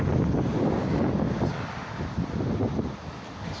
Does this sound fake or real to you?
real